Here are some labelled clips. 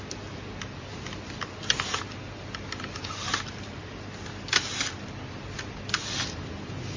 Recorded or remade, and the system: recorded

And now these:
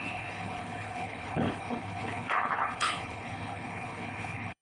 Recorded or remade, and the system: remade, codec, HILCodec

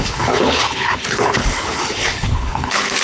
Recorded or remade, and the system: remade, codec, HILCodec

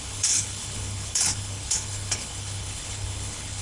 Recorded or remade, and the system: remade, codec, HILCodec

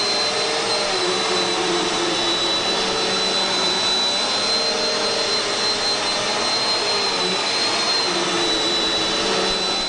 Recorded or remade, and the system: recorded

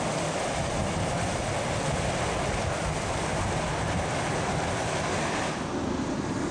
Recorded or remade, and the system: recorded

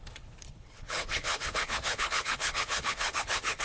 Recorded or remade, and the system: remade, codec, HILCodec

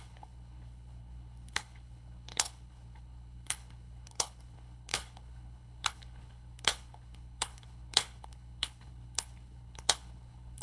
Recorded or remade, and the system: remade, codec, HILCodec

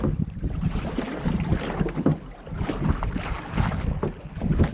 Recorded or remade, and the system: recorded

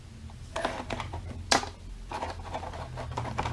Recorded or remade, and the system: recorded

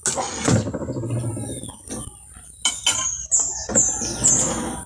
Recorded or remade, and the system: recorded